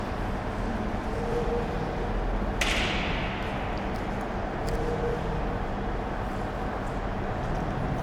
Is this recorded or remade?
recorded